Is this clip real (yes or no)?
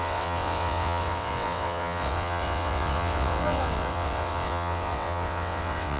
no